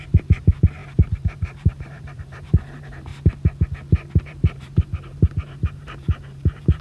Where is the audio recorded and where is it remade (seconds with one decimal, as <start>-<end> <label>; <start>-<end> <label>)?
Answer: 0.0-3.1 remade; 3.1-4.2 recorded; 4.2-6.8 remade